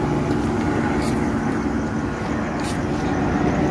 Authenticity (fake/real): real